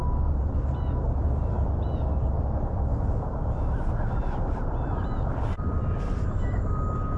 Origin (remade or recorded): recorded